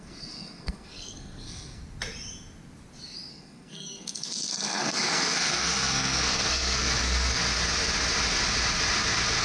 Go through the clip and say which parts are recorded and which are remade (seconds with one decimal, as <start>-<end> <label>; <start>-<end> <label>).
0.0-1.8 remade; 1.8-3.3 recorded; 3.3-7.4 remade; 7.4-9.4 recorded

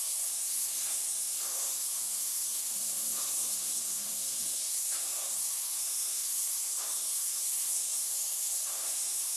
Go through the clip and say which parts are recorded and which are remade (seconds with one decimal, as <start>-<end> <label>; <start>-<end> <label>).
0.0-9.4 remade